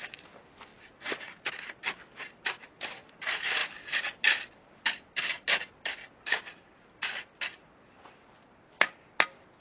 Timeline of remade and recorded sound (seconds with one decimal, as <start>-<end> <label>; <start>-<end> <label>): 0.0-9.6 recorded